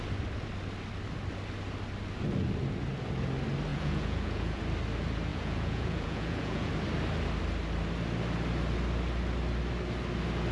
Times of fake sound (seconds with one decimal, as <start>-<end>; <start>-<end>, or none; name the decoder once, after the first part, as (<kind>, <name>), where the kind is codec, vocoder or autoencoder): 3.7-4.6 (vocoder, Vocos); 5.3-6.7